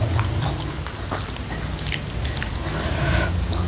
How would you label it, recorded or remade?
recorded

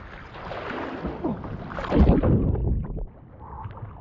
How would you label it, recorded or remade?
recorded